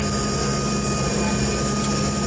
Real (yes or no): yes